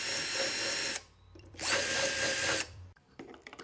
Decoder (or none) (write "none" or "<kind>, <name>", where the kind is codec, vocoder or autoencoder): vocoder, BigVGAN v2